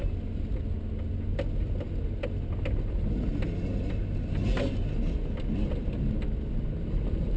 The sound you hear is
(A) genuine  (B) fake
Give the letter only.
A